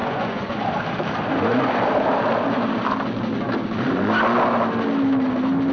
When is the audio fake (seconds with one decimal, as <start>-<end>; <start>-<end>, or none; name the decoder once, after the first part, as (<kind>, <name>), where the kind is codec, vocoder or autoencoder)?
0.0-0.6 (vocoder, Vocos)